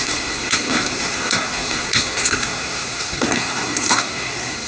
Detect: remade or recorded remade